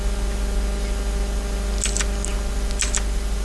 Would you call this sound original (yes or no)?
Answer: yes